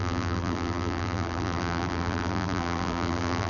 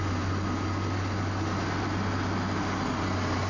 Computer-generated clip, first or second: first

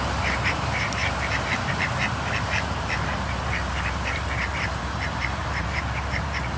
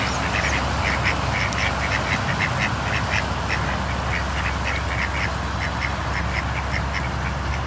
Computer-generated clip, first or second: first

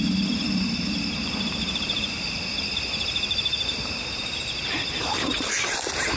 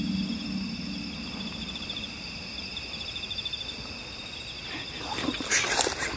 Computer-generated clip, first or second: first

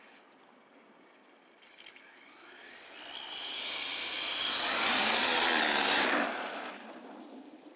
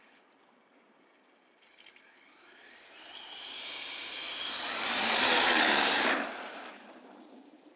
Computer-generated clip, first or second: second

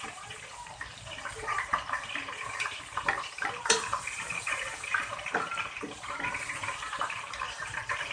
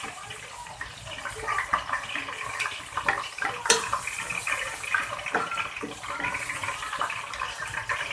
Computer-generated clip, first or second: first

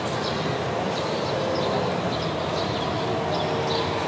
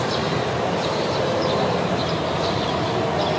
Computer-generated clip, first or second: second